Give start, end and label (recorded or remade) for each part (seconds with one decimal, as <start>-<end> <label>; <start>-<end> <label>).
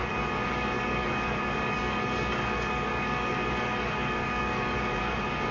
0.0-5.5 remade